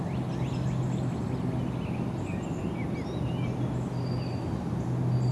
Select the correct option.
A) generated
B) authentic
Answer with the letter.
B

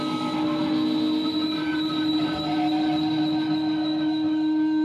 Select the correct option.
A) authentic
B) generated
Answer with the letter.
A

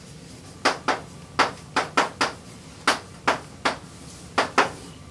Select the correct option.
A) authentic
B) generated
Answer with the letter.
A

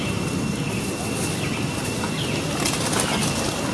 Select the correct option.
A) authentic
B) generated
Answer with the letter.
A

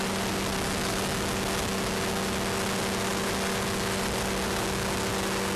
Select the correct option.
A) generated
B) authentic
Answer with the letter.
B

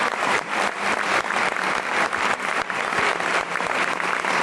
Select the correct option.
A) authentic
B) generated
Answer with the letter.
B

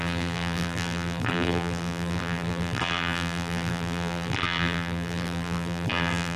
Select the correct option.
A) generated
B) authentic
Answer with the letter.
A